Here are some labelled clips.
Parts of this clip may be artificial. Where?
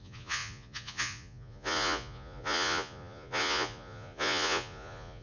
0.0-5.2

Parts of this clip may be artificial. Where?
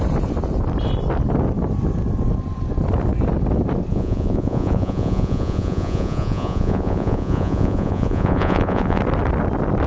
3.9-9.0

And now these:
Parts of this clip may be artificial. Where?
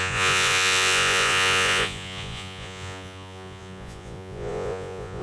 0.0-5.2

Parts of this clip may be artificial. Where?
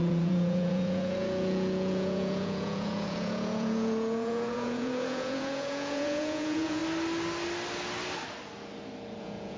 0.0-6.8; 9.2-9.6